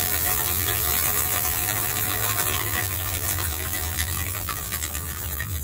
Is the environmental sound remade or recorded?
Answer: remade